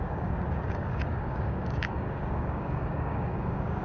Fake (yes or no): yes